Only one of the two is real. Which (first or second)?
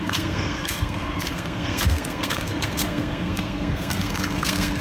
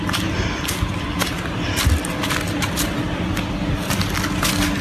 second